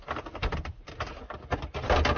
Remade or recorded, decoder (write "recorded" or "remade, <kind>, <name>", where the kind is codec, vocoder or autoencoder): recorded